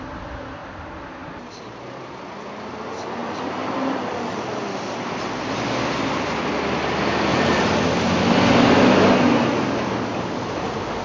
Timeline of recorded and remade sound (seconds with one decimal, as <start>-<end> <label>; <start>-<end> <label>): 0.0-0.6 recorded; 0.6-1.6 remade; 1.6-3.2 recorded; 3.2-4.6 remade; 4.6-7.3 recorded; 7.3-7.8 remade; 7.8-11.0 recorded